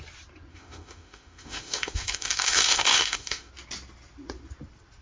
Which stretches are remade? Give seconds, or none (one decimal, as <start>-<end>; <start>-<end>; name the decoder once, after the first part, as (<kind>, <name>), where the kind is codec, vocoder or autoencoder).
0.5-3.5 (autoencoder, DAC-VAE)